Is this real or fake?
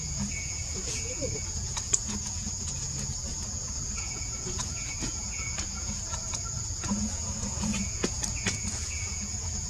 fake